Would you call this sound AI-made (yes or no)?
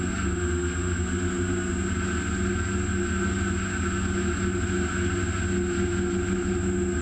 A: no